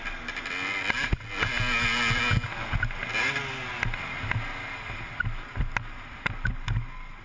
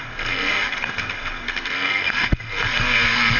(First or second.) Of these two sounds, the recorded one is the first